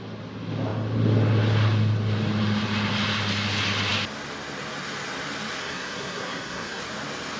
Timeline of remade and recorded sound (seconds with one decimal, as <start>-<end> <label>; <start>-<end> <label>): 0.0-5.6 recorded; 5.6-6.8 remade; 6.8-7.4 recorded